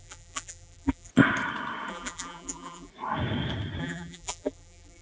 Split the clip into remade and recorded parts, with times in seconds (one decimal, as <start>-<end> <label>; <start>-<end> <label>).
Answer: 0.0-1.1 remade; 1.1-1.9 recorded; 1.9-2.9 remade; 2.9-3.8 recorded; 3.8-5.0 remade